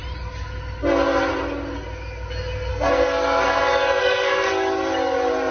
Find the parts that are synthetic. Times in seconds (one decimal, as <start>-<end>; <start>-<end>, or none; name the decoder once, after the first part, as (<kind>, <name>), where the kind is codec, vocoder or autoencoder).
2.7-3.6 (codec, SNAC); 4.0-4.5